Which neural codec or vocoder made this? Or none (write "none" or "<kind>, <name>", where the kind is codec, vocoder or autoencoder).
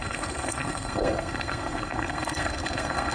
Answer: codec, SNAC